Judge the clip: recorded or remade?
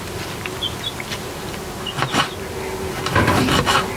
recorded